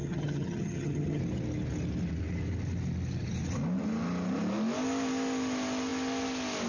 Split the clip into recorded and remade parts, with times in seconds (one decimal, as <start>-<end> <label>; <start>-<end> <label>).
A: 0.0-1.2 remade; 1.2-6.7 recorded